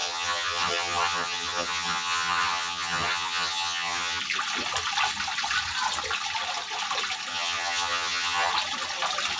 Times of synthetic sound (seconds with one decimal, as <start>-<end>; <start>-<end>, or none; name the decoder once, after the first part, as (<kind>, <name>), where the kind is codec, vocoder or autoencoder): 0.0-4.2 (vocoder, HiFi-GAN); 7.3-8.5